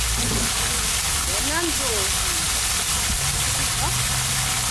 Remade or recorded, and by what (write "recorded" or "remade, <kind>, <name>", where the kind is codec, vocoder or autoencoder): recorded